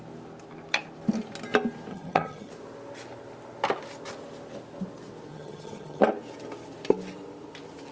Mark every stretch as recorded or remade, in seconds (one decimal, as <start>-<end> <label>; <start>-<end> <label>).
0.0-1.9 recorded; 1.9-2.5 remade; 2.5-5.3 recorded; 5.3-6.0 remade; 6.0-7.9 recorded